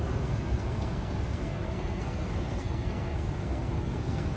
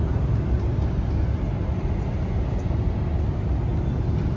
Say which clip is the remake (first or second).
first